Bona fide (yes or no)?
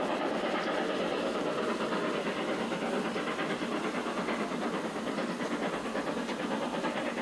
yes